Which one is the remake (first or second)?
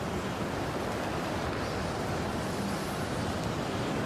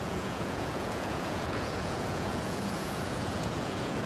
second